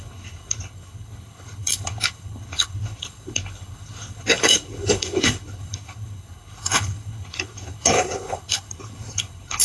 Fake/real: fake